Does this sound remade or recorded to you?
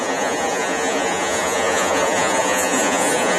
remade